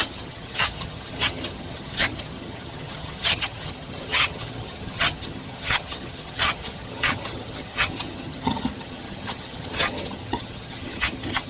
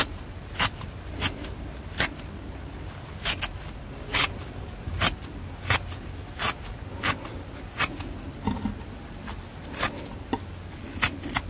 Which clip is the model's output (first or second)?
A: first